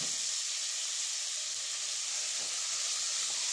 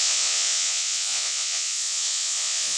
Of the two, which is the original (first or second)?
first